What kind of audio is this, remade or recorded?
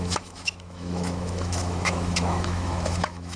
remade